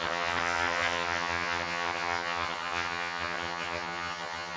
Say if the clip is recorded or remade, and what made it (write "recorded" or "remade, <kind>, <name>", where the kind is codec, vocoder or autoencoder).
remade, vocoder, HiFi-GAN